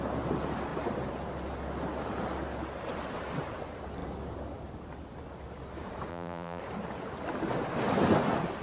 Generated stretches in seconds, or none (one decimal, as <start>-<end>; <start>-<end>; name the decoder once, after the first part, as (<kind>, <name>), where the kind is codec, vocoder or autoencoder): 6.1-6.6 (vocoder, BigVGAN v2)